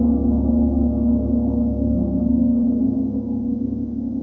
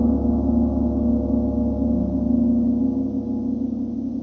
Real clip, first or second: second